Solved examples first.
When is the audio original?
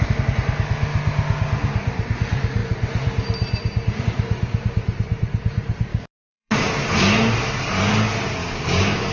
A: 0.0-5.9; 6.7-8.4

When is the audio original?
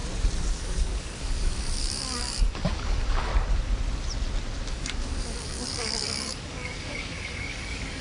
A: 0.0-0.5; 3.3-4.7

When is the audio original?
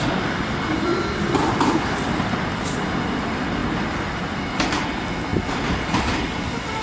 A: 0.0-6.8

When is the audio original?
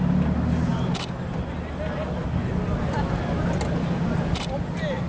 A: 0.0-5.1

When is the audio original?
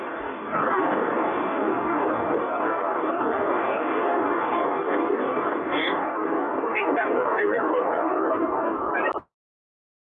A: 8.9-9.5